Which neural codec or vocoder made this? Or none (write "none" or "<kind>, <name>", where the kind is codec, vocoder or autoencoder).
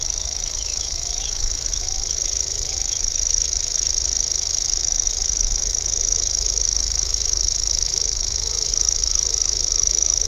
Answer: autoencoder, DAC-VAE